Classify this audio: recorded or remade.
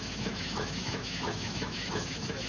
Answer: remade